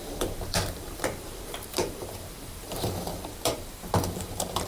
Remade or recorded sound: remade